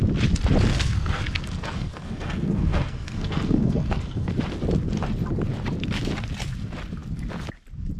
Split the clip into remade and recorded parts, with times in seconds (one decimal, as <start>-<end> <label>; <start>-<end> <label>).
0.0-0.7 recorded; 0.7-4.3 remade; 4.3-8.0 recorded